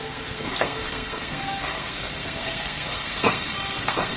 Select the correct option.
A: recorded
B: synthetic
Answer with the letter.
B